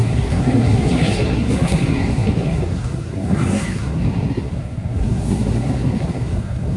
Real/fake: fake